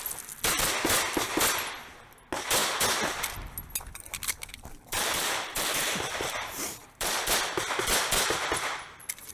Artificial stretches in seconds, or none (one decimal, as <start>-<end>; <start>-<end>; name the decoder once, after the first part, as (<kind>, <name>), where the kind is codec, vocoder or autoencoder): 4.5-7.3 (vocoder, BigVGAN v2)